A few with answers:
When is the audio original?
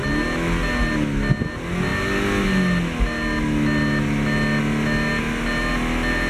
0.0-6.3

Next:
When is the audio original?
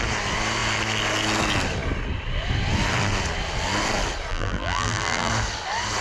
0.0-4.3; 5.3-6.0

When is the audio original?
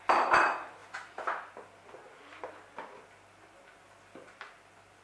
0.0-5.0